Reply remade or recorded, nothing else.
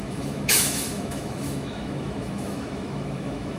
remade